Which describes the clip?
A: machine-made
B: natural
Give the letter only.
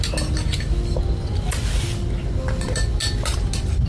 B